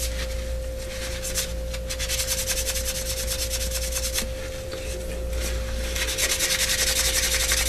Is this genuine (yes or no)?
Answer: yes